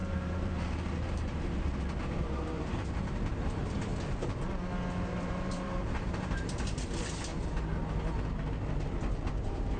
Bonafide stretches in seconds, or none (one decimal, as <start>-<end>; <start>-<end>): 3.9-5.0; 7.3-9.4